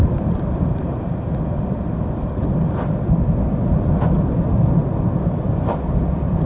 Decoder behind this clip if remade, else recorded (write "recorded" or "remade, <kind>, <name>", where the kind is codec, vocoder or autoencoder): recorded